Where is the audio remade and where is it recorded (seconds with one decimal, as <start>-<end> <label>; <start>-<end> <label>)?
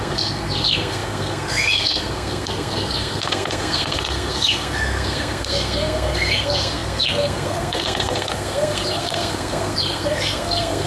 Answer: 0.0-10.9 remade